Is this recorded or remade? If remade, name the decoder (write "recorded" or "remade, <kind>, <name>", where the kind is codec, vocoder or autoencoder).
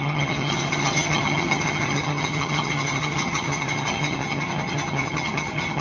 remade, vocoder, HiFi-GAN